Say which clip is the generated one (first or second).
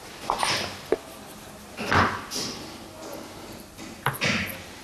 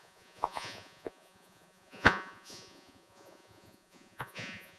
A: second